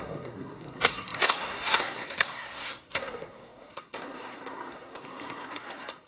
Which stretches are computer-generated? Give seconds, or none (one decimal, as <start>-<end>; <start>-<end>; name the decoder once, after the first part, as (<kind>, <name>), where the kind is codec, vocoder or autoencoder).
0.0-6.1 (codec, SNAC)